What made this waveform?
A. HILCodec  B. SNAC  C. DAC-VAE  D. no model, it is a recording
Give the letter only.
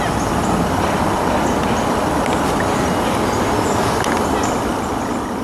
D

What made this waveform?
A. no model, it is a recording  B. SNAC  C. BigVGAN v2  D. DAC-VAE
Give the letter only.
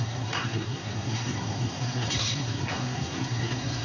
B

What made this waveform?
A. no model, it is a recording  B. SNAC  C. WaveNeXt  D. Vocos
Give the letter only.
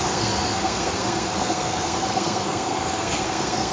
B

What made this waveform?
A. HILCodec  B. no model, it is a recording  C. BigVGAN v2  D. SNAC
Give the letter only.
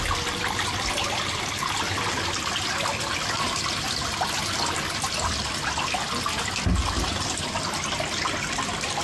B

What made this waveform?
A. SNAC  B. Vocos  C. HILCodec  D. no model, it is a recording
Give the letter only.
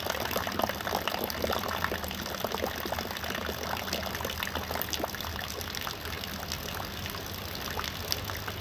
D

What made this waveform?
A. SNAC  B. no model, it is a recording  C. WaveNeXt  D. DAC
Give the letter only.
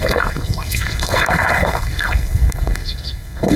A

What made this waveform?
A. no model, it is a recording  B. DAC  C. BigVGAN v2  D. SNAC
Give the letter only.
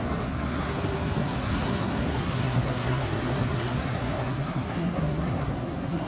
D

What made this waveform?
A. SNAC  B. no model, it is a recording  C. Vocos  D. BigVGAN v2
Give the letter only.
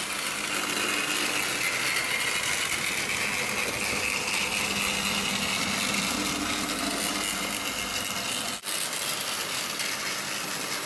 B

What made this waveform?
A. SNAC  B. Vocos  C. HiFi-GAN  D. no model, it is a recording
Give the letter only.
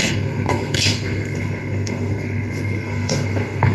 A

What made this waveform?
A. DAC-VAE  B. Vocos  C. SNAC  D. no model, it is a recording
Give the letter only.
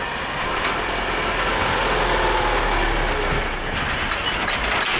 D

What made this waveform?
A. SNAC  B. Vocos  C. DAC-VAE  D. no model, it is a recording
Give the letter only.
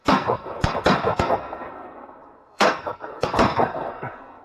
A